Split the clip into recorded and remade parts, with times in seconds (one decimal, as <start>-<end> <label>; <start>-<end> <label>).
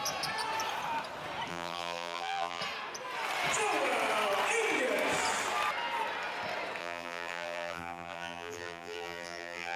0.0-1.5 recorded; 1.5-2.6 remade; 2.6-6.8 recorded; 6.8-9.8 remade